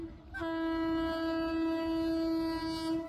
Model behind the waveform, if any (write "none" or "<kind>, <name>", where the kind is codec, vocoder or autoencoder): none